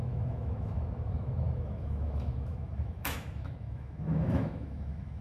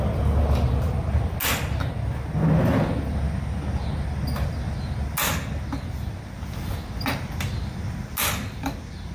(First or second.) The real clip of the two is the second